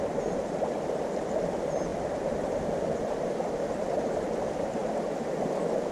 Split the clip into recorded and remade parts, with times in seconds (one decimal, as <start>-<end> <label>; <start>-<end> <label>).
0.0-1.9 recorded; 1.9-4.3 remade; 4.3-5.9 recorded